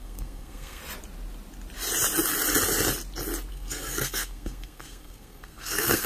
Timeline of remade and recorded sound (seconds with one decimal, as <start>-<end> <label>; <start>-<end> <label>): 0.0-0.8 remade; 0.8-3.5 recorded; 3.5-6.1 remade